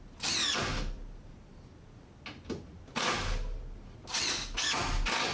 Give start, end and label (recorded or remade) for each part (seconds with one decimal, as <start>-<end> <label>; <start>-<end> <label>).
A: 0.0-5.3 recorded